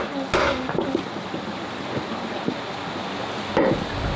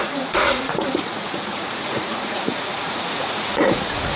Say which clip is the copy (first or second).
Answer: second